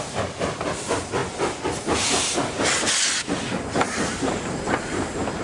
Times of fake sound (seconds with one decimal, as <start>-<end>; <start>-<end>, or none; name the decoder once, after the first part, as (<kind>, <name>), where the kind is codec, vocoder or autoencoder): none